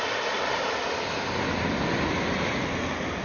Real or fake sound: real